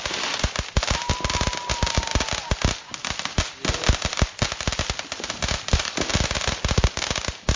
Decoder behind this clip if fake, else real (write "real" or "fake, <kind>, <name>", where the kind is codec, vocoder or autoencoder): real